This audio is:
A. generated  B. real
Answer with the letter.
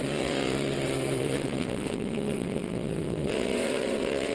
A